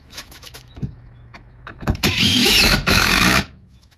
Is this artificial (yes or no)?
yes